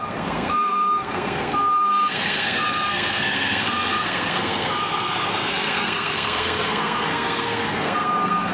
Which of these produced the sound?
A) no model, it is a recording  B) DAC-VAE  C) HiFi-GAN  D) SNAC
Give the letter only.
D